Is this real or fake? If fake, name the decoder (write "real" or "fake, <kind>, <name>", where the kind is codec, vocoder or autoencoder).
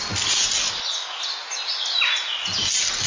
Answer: real